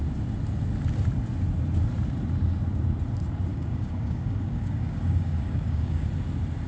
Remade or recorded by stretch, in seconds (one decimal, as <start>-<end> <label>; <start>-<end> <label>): 0.0-3.5 recorded; 3.5-6.1 remade; 6.1-6.7 recorded

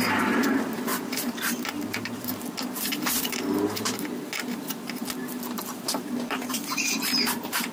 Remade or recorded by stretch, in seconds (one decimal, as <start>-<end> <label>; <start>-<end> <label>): 0.0-0.9 recorded; 0.9-3.4 remade; 3.4-5.2 recorded; 5.2-7.7 remade